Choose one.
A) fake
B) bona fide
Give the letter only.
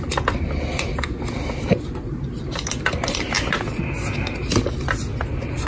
B